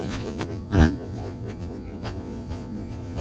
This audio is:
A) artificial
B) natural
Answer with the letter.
A